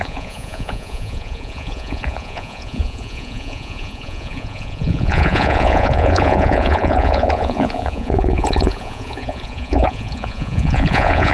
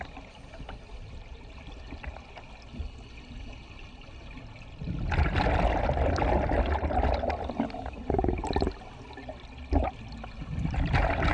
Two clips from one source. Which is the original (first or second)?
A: second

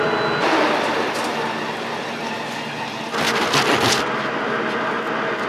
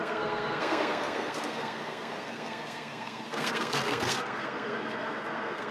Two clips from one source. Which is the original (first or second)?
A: first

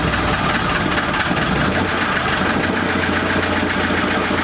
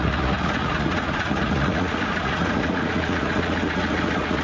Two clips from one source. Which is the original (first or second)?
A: first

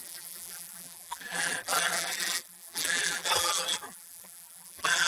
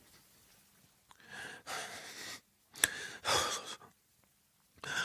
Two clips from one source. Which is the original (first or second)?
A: second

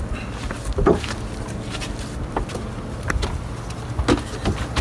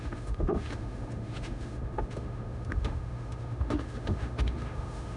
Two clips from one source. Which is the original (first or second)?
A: first